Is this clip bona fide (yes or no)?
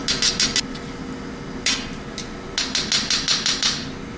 yes